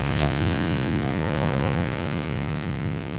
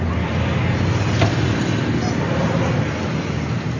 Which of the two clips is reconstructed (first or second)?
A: first